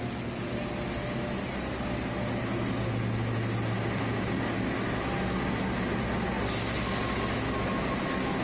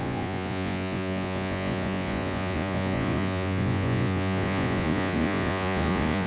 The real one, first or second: first